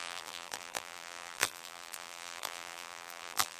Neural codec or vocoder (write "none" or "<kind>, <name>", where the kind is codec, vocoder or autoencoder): vocoder, BigVGAN v2